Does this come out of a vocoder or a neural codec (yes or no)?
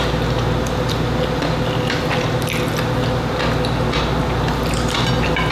no